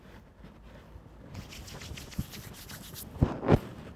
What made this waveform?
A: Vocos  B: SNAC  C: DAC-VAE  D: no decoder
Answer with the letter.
D